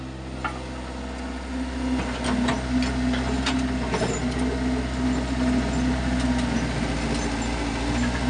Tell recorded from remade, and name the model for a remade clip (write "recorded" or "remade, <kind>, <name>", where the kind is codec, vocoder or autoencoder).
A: recorded